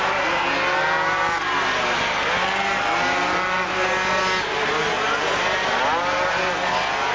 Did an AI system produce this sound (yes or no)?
no